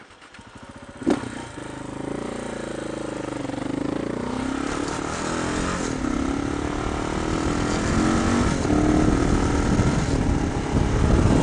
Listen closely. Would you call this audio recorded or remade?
recorded